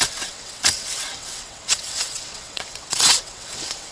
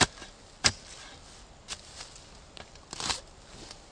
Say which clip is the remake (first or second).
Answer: first